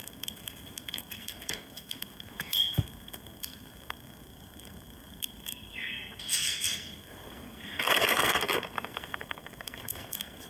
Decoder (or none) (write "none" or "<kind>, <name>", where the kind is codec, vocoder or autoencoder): codec, SNAC